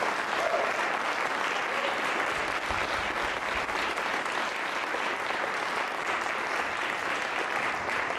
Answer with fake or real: real